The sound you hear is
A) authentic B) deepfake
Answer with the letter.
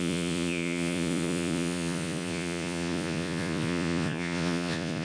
B